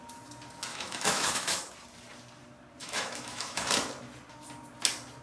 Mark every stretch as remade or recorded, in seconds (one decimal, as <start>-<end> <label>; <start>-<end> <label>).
0.0-0.7 recorded; 0.7-1.7 remade; 1.7-2.8 recorded; 2.8-3.7 remade; 3.7-5.2 recorded

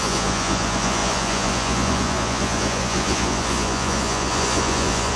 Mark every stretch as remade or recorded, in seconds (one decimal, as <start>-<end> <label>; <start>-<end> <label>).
0.0-5.2 remade

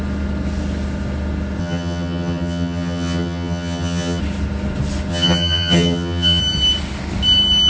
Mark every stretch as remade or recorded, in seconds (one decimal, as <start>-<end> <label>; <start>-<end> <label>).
0.0-1.6 recorded; 1.6-4.2 remade; 4.2-5.1 recorded; 5.1-6.4 remade; 6.4-7.7 recorded

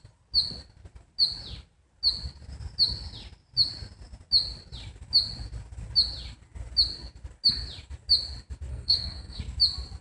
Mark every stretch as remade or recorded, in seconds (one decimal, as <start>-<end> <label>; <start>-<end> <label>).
0.0-8.7 recorded; 8.7-9.4 remade; 9.4-10.0 recorded

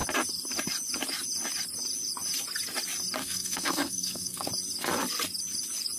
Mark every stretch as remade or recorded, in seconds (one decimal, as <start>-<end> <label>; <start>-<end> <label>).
0.0-3.2 recorded; 3.2-4.5 remade; 4.5-6.0 recorded